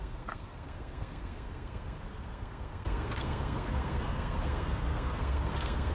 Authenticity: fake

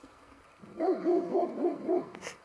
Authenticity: fake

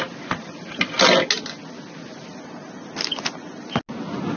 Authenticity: real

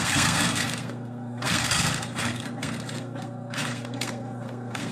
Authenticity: fake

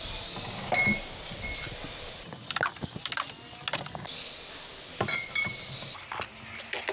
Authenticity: real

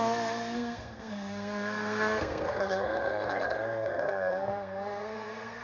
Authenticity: fake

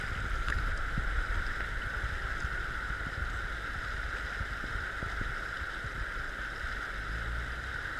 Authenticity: real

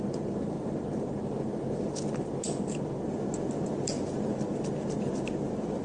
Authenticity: real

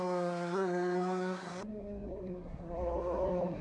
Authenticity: fake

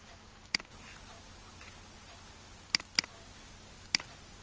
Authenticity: real